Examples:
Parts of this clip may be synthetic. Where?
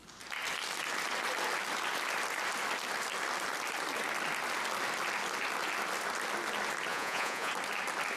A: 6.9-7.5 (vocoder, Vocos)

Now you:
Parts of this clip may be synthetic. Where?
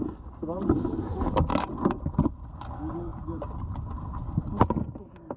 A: none